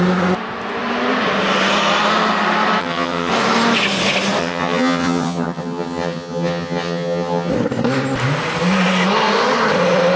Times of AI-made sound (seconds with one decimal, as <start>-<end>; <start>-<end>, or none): 2.8-3.3; 4.4-7.5

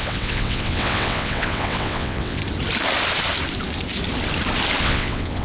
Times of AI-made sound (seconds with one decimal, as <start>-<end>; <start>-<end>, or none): 0.0-2.4; 4.8-5.4

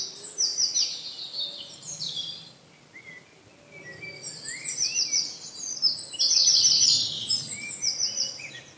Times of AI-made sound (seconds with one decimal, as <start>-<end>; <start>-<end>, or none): 0.5-3.5; 6.4-7.2; 7.8-8.4

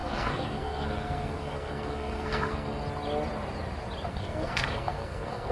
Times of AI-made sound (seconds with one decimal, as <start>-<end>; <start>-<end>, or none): 0.0-2.8; 4.1-5.5

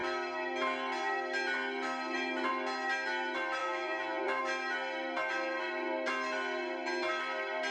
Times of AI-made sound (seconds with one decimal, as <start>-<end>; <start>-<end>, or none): 3.6-4.4

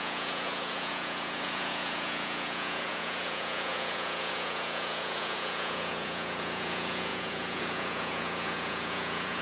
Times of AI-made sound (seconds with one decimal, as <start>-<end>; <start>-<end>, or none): 0.0-9.4

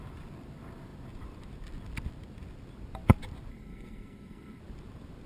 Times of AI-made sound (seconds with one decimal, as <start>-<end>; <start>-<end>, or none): 3.5-4.6